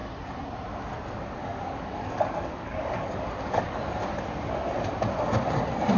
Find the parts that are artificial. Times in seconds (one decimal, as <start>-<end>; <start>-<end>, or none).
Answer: 1.4-3.8